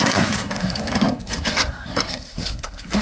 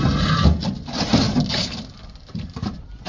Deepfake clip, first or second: first